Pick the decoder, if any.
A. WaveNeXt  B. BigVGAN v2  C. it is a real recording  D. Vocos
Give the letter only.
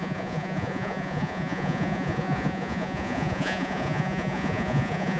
D